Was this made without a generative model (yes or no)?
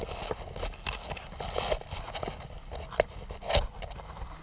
yes